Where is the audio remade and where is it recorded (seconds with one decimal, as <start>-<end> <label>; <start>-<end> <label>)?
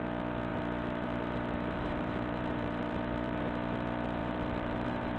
0.0-0.5 recorded; 0.5-3.4 remade; 3.4-4.2 recorded; 4.2-5.2 remade